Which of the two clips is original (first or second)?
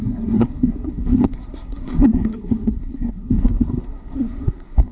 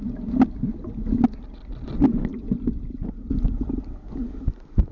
second